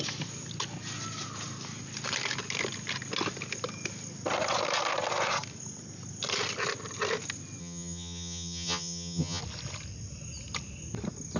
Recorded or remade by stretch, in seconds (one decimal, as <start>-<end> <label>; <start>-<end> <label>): 0.0-7.6 recorded; 7.6-9.4 remade; 9.4-11.4 recorded